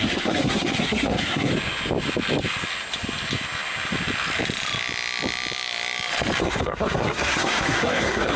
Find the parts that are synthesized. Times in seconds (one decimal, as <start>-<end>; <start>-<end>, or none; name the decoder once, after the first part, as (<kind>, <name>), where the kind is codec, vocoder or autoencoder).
0.0-1.5 (codec, SNAC); 6.4-8.4